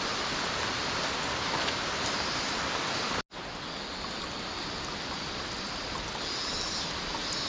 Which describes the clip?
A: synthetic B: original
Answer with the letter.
B